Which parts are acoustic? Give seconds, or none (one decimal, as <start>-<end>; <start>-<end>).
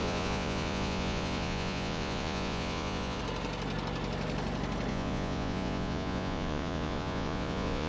3.2-4.9